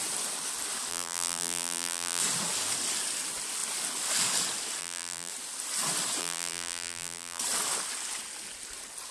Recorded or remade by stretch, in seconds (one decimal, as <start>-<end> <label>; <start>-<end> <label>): 0.0-0.9 recorded; 0.9-2.2 remade; 2.2-4.8 recorded; 4.8-5.3 remade; 5.3-6.2 recorded; 6.2-7.4 remade; 7.4-9.1 recorded